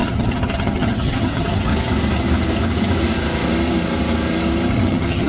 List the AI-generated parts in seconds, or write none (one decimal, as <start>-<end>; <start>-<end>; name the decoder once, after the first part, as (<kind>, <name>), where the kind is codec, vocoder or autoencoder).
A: 0.0-1.7 (vocoder, HiFi-GAN); 4.7-5.3